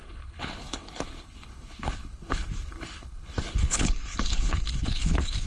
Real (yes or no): no